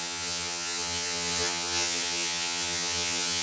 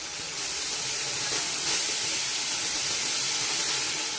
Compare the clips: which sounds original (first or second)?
second